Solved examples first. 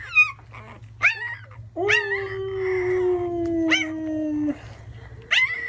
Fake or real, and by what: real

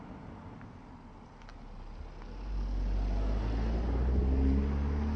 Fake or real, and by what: real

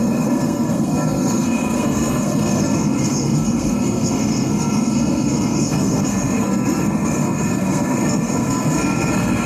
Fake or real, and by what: fake, codec, SNAC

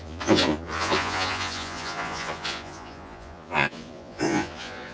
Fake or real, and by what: fake, vocoder, Vocos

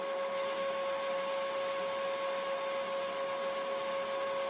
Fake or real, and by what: real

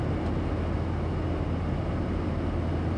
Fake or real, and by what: real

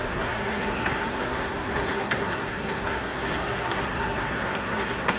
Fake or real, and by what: fake, codec, SNAC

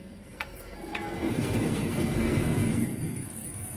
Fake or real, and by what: fake, codec, SNAC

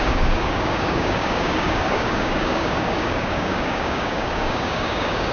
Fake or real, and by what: fake, codec, DAC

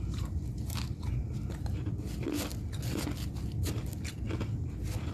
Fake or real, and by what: real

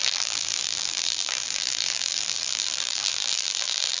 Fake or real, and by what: fake, vocoder, BigVGAN v2